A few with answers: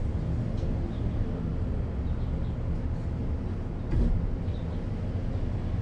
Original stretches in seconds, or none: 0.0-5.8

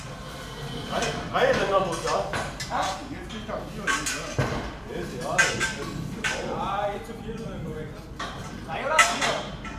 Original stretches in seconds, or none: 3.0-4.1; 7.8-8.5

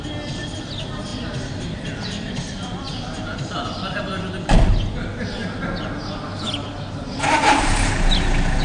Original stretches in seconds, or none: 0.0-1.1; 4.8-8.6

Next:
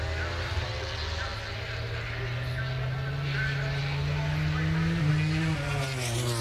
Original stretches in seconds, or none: 0.0-6.4